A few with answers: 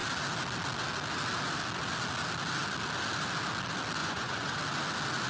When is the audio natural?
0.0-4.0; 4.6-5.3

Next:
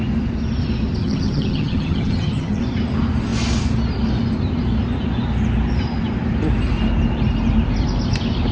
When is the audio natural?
0.0-1.0; 2.6-8.5

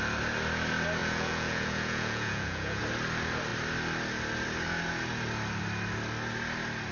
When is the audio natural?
0.0-1.0; 2.8-6.9

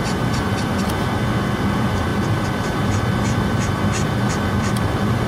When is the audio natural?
0.0-5.3

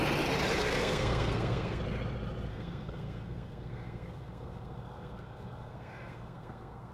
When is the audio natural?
0.0-0.6; 1.8-2.5

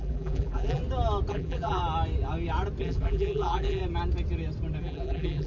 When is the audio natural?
0.8-1.3; 1.8-2.8; 3.8-4.8

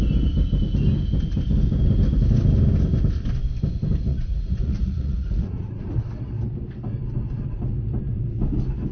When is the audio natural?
0.0-4.1; 6.0-8.9